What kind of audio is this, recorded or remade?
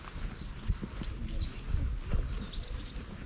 recorded